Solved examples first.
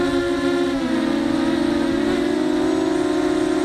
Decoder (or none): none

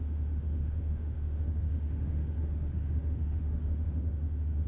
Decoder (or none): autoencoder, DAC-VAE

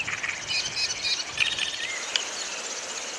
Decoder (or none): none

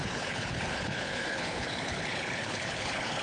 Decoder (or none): codec, HILCodec